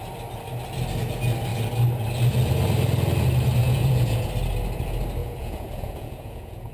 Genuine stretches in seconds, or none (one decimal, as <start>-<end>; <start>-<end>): 0.0-3.6; 4.3-5.2